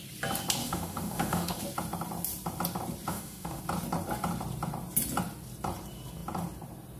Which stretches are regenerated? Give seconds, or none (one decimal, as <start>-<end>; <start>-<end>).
0.6-1.6; 3.1-3.6